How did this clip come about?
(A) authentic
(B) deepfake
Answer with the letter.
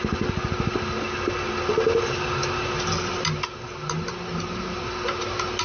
A